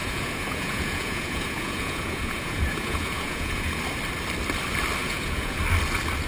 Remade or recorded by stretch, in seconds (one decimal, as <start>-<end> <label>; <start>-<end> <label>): 0.0-3.8 remade; 3.8-5.0 recorded; 5.0-5.6 remade; 5.6-6.3 recorded